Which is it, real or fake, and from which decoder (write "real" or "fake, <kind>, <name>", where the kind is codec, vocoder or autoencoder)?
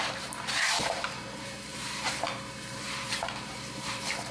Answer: fake, vocoder, BigVGAN v2